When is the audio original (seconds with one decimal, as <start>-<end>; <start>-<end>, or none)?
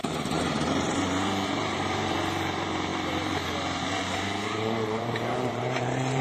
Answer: none